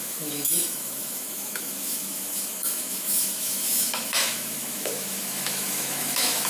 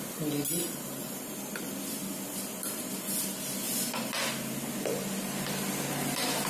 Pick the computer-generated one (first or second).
first